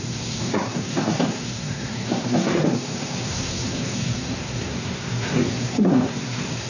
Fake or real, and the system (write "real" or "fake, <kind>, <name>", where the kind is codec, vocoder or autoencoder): fake, codec, SNAC